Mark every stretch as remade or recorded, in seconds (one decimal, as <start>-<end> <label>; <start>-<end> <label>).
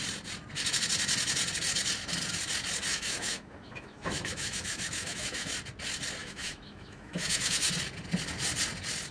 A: 0.0-2.9 recorded; 2.9-5.5 remade; 5.5-6.2 recorded; 6.2-7.7 remade; 7.7-9.1 recorded